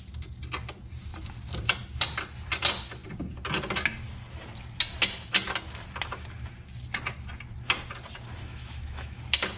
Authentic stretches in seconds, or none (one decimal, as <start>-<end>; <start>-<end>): 0.0-8.4; 9.2-9.6